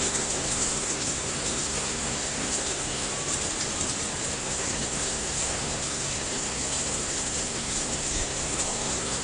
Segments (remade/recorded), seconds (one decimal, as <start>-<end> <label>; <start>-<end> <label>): 0.0-3.1 remade; 3.1-4.3 recorded; 4.3-9.2 remade